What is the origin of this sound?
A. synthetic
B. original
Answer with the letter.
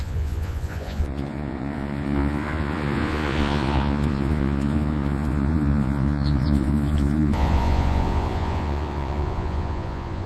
A